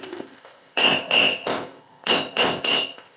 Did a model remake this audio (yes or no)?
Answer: yes